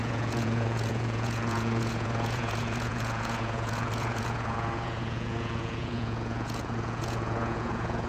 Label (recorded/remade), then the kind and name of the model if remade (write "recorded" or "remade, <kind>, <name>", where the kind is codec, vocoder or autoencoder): remade, vocoder, Vocos